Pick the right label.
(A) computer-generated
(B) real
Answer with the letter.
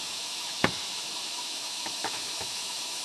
A